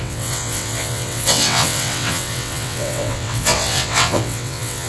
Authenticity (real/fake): fake